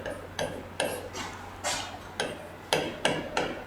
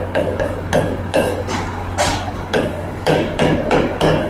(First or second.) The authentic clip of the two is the first